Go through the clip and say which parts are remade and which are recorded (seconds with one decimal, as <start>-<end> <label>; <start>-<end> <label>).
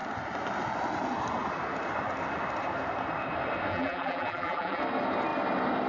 0.0-3.7 recorded; 3.7-4.8 remade; 4.8-5.9 recorded